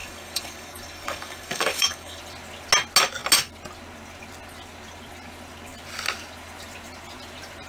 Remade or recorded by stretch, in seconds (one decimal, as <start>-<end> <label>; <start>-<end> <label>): 0.0-2.2 remade; 2.2-7.7 recorded